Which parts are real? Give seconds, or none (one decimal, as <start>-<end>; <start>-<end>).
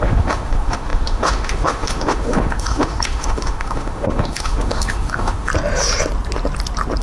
5.5-7.0